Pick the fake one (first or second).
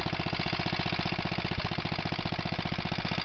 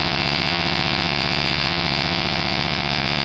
second